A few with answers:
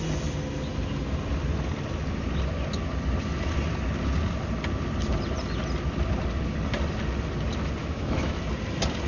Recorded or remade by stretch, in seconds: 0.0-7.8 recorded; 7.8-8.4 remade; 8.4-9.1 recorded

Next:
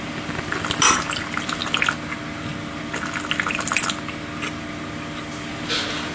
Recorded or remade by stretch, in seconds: 0.0-6.1 recorded